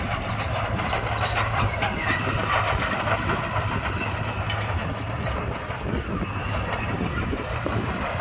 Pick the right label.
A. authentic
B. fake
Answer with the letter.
B